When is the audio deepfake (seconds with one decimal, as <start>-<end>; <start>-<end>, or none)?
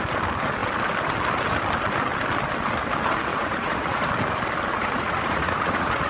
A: 3.3-4.1; 4.7-6.1